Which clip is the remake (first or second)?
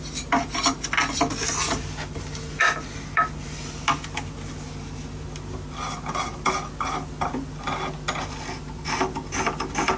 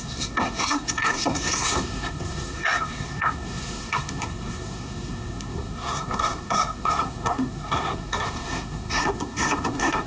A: second